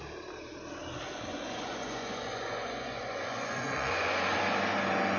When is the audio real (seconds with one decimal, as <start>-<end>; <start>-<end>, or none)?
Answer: 0.0-1.3; 4.4-5.2